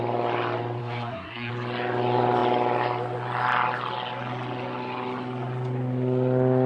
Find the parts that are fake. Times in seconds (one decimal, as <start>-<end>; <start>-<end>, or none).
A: 0.8-1.5